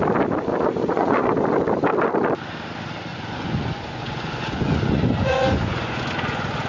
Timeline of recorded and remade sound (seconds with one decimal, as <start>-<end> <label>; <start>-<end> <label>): 0.0-0.5 recorded; 0.5-1.3 remade; 1.3-3.1 recorded; 3.1-6.7 remade